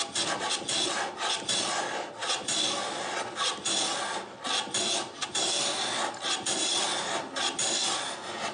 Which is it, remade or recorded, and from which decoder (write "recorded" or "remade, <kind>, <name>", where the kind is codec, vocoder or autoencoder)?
recorded